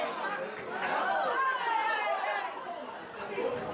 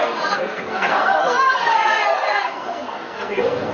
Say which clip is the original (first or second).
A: first